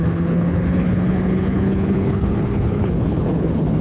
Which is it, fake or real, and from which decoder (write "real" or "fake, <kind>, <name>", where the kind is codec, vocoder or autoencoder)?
fake, codec, HILCodec